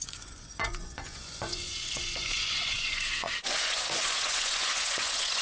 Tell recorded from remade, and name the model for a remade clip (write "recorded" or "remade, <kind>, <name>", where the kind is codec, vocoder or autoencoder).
remade, vocoder, Vocos